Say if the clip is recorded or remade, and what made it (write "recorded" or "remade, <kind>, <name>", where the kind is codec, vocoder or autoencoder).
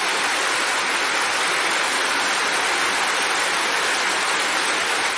recorded